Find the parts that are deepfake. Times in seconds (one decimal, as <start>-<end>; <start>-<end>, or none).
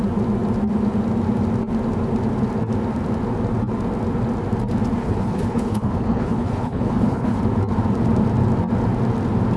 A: 5.0-7.4